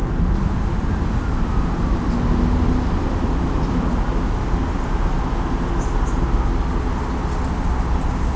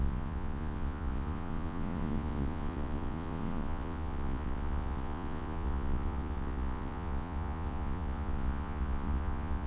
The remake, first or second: second